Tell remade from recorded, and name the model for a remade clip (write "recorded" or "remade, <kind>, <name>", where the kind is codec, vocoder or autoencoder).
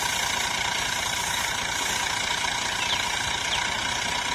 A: recorded